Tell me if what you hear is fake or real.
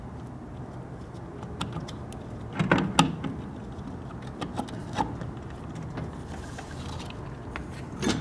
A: real